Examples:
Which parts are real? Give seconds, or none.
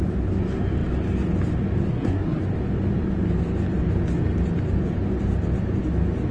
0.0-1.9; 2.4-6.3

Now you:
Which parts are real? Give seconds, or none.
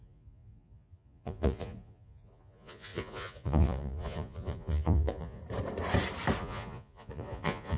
5.4-6.4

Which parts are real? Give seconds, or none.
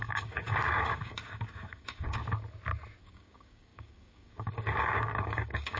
2.2-3.0